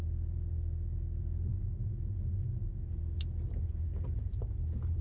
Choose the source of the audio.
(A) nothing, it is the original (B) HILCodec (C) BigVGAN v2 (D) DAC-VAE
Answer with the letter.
A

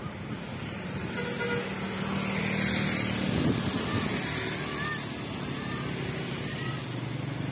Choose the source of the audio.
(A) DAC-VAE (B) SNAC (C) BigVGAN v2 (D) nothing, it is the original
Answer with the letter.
D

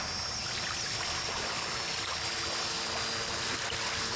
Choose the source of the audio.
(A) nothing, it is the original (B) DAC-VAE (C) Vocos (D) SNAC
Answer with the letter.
A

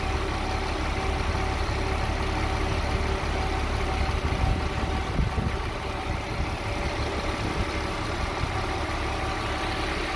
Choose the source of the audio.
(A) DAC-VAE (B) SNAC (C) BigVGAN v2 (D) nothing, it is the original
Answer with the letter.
D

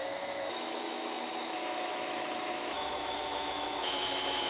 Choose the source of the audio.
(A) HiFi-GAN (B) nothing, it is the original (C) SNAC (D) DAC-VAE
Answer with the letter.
D